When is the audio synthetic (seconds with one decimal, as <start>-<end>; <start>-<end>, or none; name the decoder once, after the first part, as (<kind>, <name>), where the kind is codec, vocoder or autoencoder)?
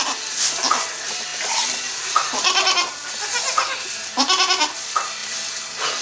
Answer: none